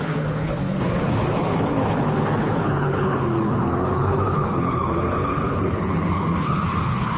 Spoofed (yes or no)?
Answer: yes